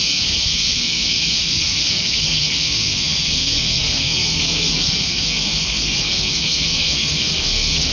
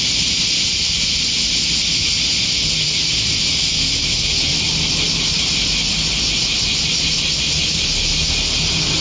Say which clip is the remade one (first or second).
first